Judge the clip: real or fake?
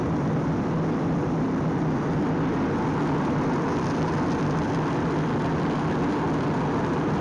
real